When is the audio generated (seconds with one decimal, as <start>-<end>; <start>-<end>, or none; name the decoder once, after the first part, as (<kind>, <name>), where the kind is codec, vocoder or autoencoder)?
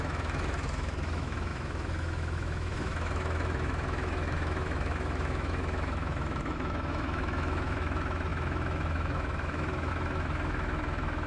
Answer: 0.0-11.3 (autoencoder, DAC-VAE)